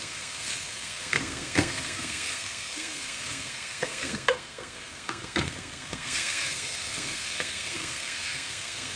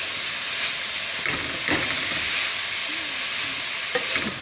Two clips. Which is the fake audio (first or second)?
first